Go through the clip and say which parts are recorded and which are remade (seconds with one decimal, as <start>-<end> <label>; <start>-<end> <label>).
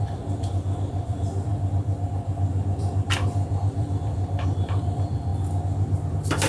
0.0-5.3 remade; 5.3-6.1 recorded; 6.1-6.5 remade